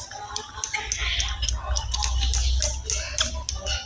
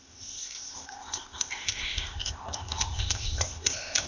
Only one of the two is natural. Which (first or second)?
first